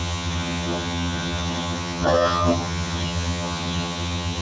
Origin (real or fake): fake